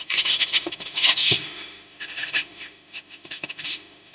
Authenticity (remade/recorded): remade